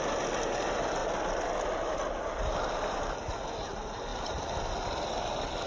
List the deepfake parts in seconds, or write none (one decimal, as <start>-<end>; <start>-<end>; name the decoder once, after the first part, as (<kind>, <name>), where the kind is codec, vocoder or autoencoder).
1.0-2.7 (vocoder, BigVGAN v2); 4.1-4.7